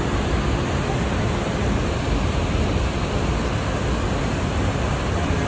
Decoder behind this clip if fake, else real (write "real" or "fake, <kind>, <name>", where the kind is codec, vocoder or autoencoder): real